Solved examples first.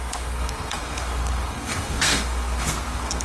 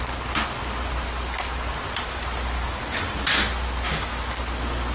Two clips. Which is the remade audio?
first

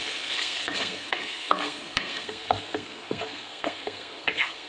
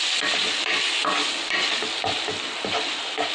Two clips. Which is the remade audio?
first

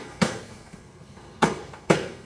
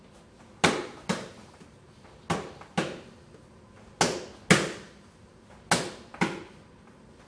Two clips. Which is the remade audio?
first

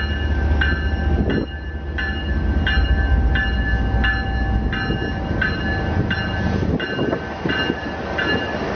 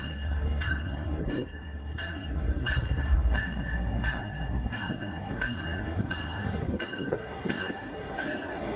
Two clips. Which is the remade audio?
second